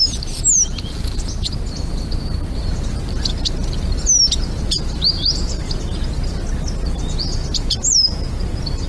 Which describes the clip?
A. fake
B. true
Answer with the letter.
B